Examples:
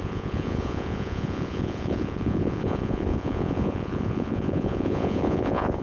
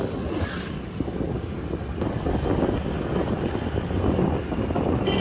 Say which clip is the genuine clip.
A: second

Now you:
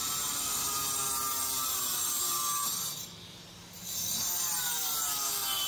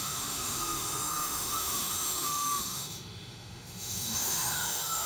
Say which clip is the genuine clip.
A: first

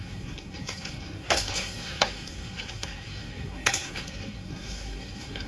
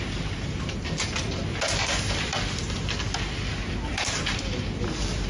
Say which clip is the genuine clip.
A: second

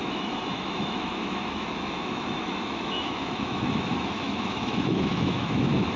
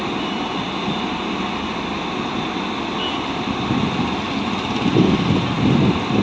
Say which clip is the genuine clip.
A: second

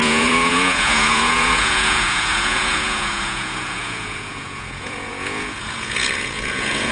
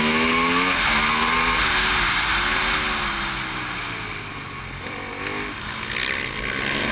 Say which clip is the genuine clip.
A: second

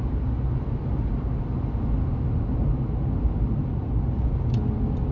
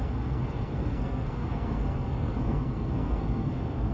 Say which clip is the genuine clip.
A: first